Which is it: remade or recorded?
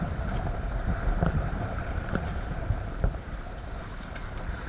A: remade